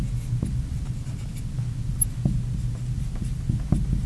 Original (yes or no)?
yes